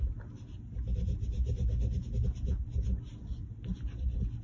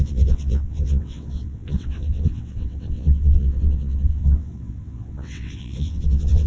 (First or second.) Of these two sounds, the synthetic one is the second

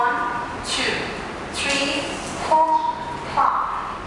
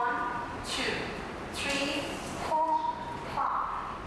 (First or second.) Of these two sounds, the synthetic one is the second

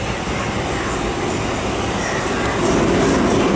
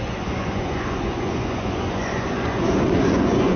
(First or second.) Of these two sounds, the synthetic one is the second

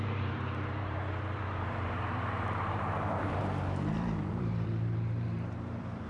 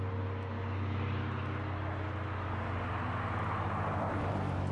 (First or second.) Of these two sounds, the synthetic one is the first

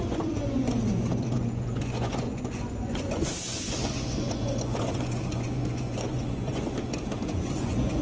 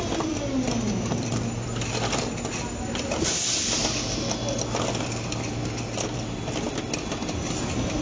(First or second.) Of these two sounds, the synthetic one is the first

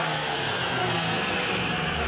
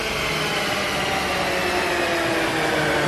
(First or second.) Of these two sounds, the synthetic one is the first